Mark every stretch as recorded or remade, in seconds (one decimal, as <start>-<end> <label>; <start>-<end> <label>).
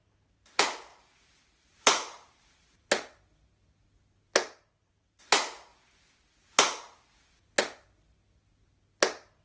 0.0-0.9 recorded; 0.9-2.9 remade; 2.9-4.4 recorded; 4.4-5.2 remade; 5.2-9.4 recorded